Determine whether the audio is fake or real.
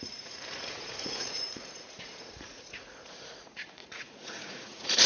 fake